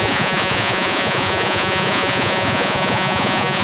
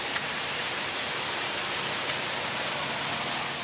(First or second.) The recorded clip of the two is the second